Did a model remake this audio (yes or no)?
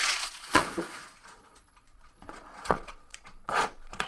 yes